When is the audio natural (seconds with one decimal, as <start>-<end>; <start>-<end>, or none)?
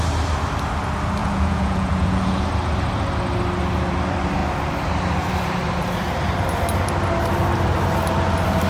0.0-1.2; 2.4-8.7